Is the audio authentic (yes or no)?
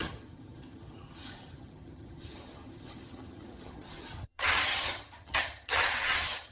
no